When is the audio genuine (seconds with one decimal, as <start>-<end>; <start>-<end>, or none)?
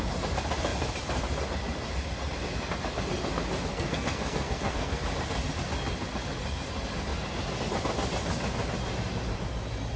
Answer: 0.0-3.7; 5.0-10.0